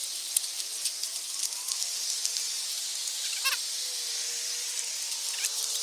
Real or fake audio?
real